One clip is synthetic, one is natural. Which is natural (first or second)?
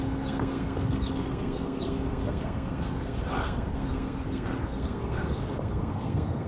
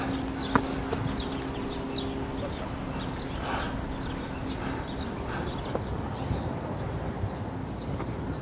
second